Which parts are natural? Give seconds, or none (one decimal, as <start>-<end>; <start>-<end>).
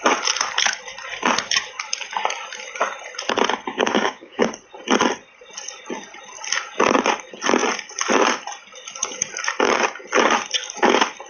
0.0-3.7; 4.5-11.3